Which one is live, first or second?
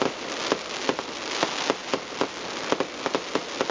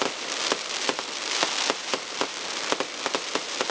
first